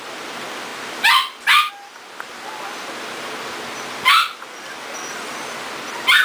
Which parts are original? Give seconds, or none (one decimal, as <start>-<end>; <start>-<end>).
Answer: 0.0-6.2

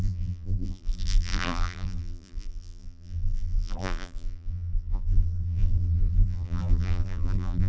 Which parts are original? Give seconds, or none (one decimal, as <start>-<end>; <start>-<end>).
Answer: none

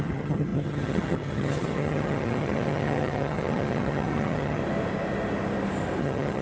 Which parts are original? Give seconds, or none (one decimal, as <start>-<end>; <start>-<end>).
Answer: 4.6-6.0

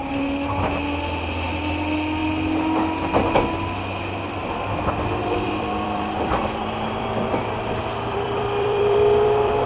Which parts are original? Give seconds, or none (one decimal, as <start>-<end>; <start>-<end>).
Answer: 0.0-5.2